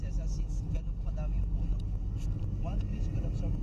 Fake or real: real